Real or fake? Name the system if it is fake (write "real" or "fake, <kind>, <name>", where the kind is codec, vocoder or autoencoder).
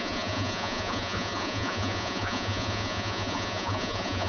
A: fake, vocoder, Vocos